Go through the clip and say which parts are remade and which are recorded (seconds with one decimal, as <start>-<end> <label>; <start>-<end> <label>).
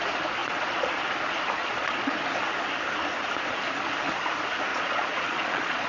0.0-0.4 recorded; 0.4-1.0 remade; 1.0-1.6 recorded; 1.6-2.1 remade; 2.1-4.7 recorded; 4.7-5.9 remade